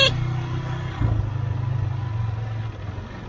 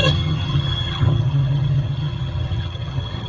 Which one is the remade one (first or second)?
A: second